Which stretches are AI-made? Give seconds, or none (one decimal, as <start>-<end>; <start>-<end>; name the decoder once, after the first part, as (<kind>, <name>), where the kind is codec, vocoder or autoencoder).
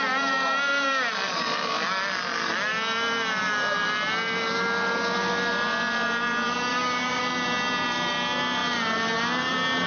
6.7-7.2 (codec, DAC)